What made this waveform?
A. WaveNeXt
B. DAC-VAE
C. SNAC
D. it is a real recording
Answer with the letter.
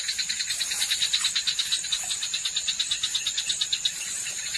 D